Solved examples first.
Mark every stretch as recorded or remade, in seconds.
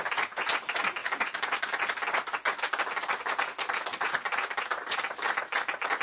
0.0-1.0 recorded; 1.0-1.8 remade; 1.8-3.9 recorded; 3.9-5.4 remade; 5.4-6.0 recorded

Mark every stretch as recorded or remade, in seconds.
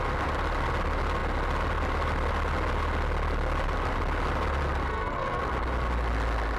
0.0-4.9 recorded; 4.9-5.4 remade; 5.4-6.6 recorded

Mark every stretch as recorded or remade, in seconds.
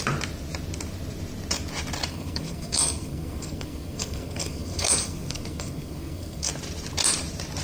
0.0-2.1 recorded; 2.1-6.5 remade; 6.5-7.6 recorded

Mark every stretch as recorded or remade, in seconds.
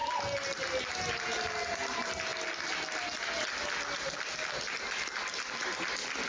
0.0-6.3 recorded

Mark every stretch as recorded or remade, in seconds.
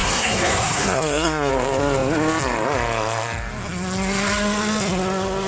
0.0-1.5 remade; 1.5-5.5 recorded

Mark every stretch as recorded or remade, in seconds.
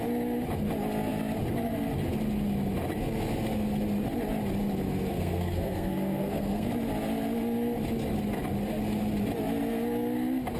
0.0-5.1 recorded; 5.1-6.7 remade; 6.7-10.6 recorded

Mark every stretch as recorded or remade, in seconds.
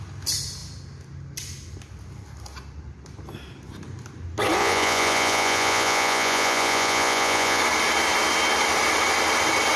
0.0-4.6 recorded; 4.6-7.6 remade; 7.6-9.8 recorded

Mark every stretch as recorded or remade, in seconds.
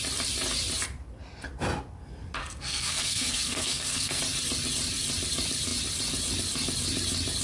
0.0-2.4 recorded; 2.4-4.2 remade; 4.2-7.4 recorded